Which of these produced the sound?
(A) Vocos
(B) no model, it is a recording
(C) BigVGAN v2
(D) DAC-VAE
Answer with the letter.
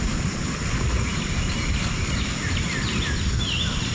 B